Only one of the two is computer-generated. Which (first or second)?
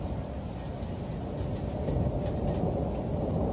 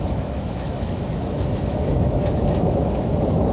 second